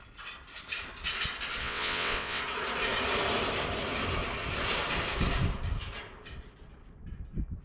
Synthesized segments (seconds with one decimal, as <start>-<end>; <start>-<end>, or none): 1.6-2.4